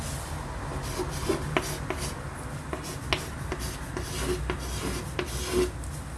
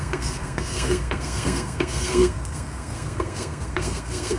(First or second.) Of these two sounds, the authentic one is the first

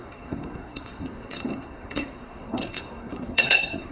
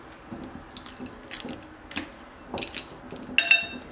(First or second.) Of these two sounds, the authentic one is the second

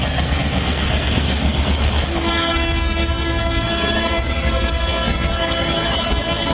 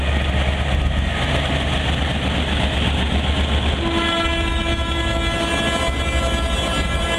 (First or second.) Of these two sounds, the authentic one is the second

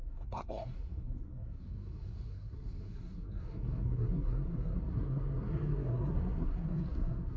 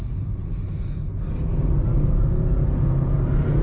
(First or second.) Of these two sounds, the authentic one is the second